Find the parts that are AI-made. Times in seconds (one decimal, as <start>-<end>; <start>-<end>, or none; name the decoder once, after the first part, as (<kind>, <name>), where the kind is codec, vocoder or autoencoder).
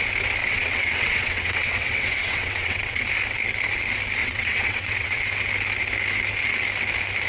0.4-3.1 (vocoder, WaveNeXt); 4.2-5.2